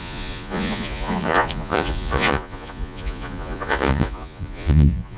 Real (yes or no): no